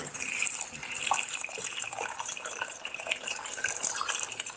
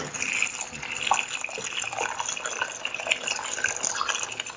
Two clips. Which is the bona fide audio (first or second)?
second